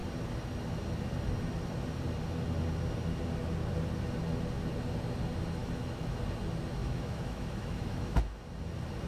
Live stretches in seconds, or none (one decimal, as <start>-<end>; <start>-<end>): 0.0-5.6; 6.2-6.8; 8.2-9.1